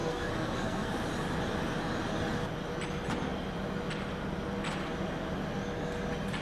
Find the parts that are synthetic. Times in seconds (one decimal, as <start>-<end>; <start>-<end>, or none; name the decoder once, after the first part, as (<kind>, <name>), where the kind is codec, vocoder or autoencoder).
0.0-0.9 (codec, SNAC)